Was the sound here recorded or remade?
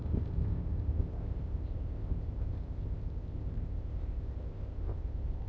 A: remade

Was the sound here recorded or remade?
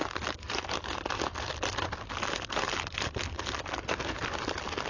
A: recorded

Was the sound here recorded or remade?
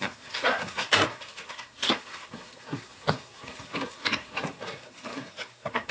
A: remade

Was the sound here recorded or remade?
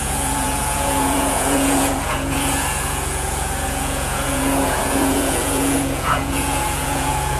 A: remade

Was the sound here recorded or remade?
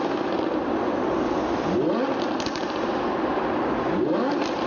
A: recorded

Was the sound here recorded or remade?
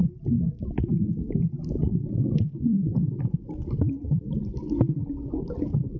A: recorded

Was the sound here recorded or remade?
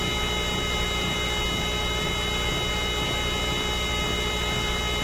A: recorded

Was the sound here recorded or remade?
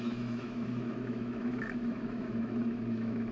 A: remade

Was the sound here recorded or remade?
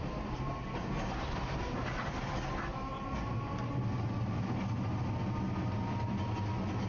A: recorded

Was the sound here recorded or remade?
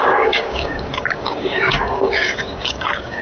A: remade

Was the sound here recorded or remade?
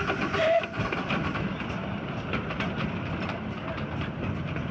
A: remade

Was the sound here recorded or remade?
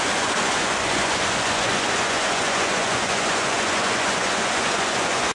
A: remade